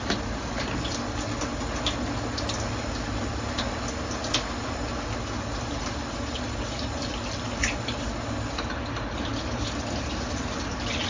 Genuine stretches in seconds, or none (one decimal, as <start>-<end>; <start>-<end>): 0.0-11.1